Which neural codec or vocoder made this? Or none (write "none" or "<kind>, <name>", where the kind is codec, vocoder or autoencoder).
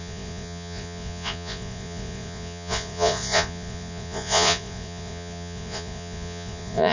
vocoder, Vocos